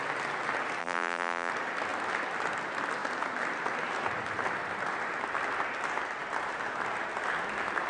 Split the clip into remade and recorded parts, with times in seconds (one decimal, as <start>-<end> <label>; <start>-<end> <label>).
0.0-0.8 recorded; 0.8-1.5 remade; 1.5-7.9 recorded